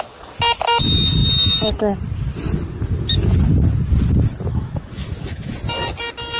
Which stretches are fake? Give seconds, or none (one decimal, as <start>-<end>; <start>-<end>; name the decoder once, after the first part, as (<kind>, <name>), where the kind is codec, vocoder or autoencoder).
4.5-5.5 (autoencoder, DAC-VAE)